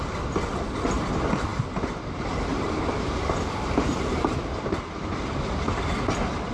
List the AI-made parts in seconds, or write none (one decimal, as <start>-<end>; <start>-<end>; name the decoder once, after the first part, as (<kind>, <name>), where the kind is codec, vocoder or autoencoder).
1.5-4.8 (vocoder, BigVGAN v2)